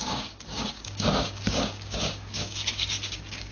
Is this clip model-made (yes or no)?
yes